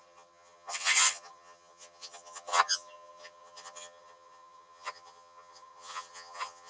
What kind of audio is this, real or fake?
fake